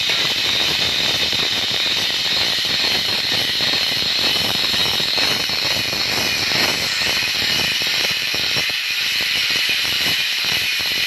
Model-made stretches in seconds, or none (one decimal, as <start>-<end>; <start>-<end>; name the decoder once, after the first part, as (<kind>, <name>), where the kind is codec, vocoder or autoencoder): 0.0-4.8 (vocoder, BigVGAN v2); 7.9-8.3; 9.6-11.1